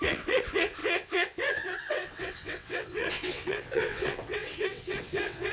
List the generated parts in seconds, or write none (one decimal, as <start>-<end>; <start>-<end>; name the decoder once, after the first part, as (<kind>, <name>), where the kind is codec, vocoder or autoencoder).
0.0-5.5 (vocoder, WaveNeXt)